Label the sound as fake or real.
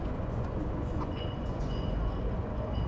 fake